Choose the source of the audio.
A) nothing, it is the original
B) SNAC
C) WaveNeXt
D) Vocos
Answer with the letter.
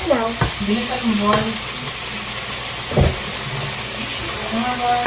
A